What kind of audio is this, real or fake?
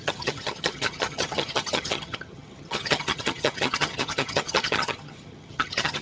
fake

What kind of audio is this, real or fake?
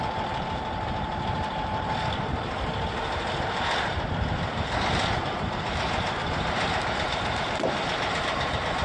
fake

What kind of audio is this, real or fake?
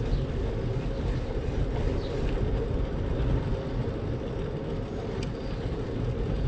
real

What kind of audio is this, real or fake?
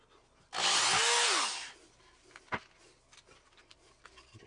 real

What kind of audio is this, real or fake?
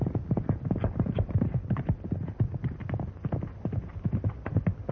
real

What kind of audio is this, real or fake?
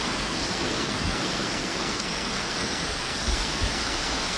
fake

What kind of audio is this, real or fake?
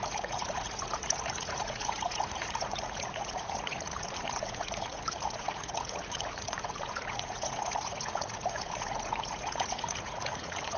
fake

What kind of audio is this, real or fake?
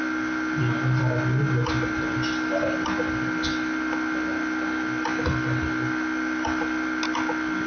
real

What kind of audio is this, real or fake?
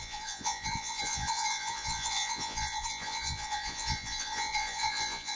fake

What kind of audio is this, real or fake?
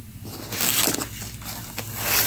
real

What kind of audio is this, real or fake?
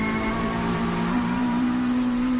fake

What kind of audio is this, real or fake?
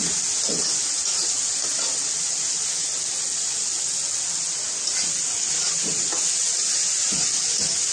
real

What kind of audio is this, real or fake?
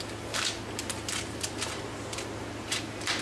real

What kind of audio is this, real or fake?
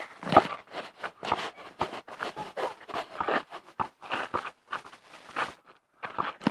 real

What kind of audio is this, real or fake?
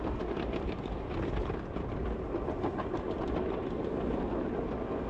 real